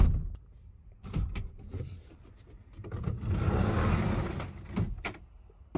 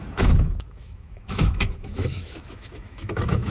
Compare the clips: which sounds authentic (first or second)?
first